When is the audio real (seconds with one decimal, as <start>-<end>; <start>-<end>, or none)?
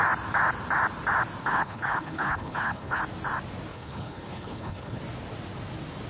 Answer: 0.0-1.4; 3.0-3.7; 5.0-6.1